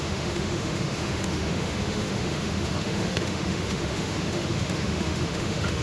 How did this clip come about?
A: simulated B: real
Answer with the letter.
A